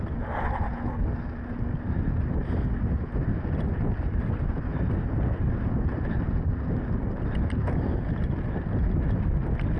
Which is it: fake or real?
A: real